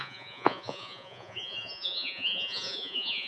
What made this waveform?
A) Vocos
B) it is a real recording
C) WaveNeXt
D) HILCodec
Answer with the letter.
A